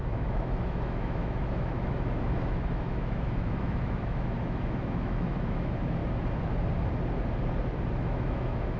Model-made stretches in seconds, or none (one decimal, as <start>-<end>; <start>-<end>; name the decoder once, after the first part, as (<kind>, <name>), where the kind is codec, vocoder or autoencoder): 0.0-6.0 (autoencoder, DAC-VAE); 7.9-8.8